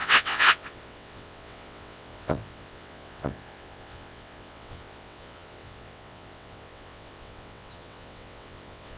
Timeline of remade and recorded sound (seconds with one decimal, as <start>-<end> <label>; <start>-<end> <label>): 0.0-9.0 remade